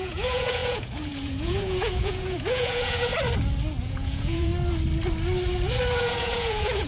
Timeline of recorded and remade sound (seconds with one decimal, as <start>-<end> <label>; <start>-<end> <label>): 0.0-3.1 remade; 3.1-3.8 recorded; 3.8-4.5 remade; 4.5-6.0 recorded; 6.0-6.9 remade